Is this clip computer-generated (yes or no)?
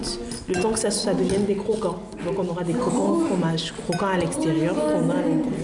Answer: no